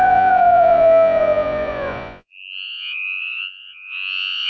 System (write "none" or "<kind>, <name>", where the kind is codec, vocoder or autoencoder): vocoder, Vocos